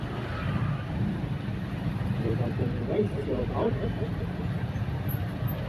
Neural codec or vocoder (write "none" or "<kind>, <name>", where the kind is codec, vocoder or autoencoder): vocoder, BigVGAN v2